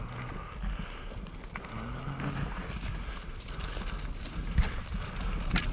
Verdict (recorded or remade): recorded